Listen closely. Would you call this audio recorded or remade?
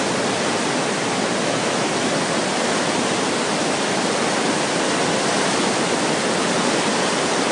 recorded